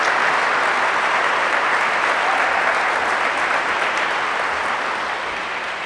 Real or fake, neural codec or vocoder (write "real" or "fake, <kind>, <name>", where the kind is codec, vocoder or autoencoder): real